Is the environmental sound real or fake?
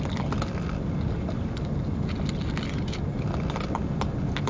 real